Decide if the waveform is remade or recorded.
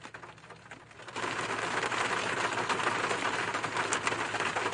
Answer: recorded